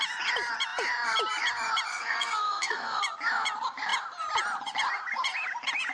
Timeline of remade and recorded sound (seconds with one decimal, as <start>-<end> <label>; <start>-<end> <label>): 0.0-1.9 recorded; 1.9-3.0 remade; 3.0-5.9 recorded